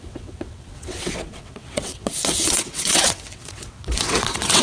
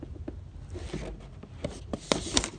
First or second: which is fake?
first